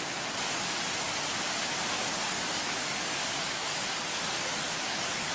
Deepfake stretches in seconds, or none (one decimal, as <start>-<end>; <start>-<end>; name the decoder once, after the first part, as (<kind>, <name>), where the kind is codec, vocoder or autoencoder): 2.1-5.3 (codec, DAC)